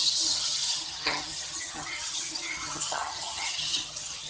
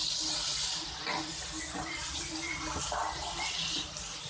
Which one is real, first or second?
second